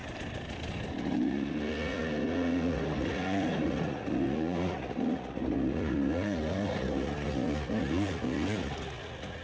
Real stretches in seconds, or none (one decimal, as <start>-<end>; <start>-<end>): 0.0-1.0